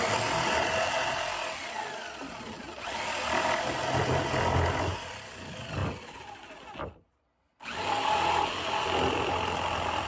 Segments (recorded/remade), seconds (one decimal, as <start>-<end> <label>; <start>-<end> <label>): 0.0-10.1 recorded